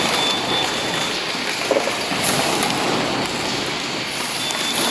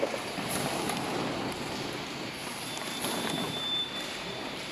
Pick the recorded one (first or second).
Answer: first